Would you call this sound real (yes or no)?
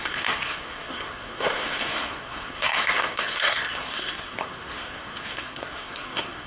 no